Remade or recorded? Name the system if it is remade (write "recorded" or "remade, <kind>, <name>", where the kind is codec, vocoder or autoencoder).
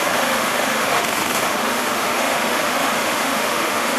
remade, autoencoder, DAC-VAE